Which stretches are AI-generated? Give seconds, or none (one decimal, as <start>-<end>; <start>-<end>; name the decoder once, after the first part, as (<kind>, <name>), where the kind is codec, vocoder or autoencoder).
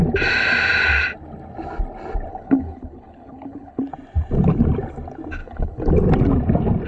2.3-3.8 (codec, HILCodec); 5.4-5.9